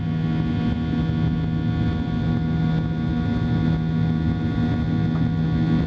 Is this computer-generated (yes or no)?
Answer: no